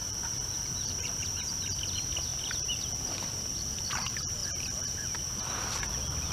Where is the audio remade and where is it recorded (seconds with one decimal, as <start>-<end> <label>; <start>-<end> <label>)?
0.0-0.7 remade; 0.7-2.3 recorded; 2.3-3.8 remade; 3.8-6.3 recorded